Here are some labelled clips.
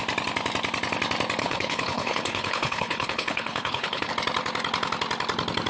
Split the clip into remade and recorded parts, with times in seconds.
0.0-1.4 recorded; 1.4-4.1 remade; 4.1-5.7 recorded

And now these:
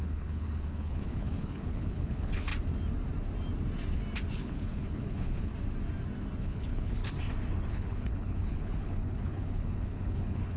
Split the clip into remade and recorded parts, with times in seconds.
0.0-2.5 remade; 2.5-4.3 recorded; 4.3-5.5 remade; 5.5-6.4 recorded; 6.4-7.0 remade; 7.0-7.7 recorded; 7.7-10.6 remade

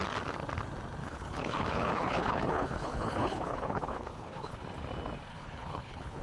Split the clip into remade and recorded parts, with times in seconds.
0.0-1.0 recorded; 1.0-4.6 remade; 4.6-5.3 recorded; 5.3-6.2 remade